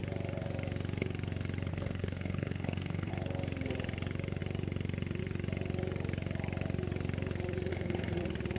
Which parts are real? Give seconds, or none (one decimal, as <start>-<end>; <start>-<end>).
0.0-1.7; 3.1-7.7; 8.2-8.6